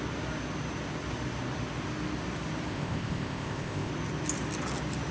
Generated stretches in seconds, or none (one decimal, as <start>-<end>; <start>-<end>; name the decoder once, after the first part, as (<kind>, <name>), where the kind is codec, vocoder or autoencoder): 2.7-3.9 (codec, ZipCodec)